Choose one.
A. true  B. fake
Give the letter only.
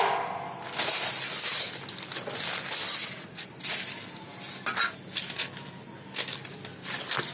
A